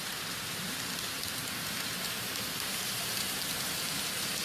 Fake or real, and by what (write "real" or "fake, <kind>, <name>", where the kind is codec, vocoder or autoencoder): fake, vocoder, BigVGAN v2